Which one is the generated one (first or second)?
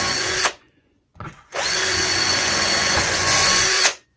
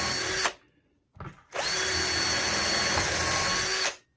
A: first